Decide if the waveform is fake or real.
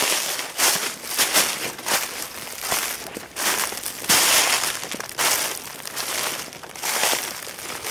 real